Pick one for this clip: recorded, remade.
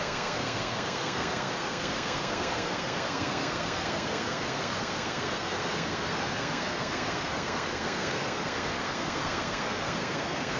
remade